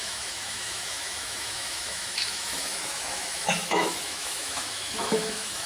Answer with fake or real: fake